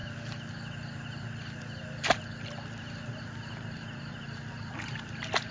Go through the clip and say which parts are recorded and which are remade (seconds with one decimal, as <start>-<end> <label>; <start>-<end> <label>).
0.0-5.5 recorded